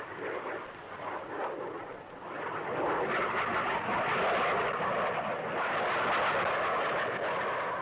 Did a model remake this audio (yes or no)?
no